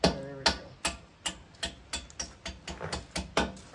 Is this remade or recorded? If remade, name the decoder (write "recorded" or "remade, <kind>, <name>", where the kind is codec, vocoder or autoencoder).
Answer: recorded